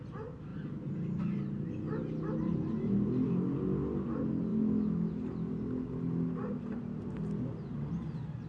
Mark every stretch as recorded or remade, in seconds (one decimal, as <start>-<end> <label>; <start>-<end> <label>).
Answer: 0.0-4.5 recorded; 4.5-5.1 remade; 5.1-8.5 recorded